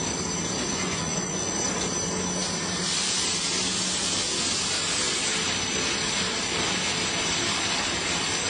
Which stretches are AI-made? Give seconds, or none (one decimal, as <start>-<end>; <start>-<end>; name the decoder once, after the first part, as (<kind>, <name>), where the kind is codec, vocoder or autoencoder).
0.7-1.6 (vocoder, Vocos)